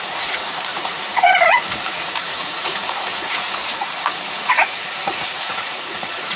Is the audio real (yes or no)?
no